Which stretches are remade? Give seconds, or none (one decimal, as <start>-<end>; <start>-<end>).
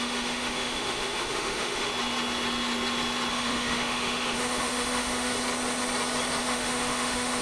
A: 0.0-1.9; 3.3-5.3; 6.4-7.4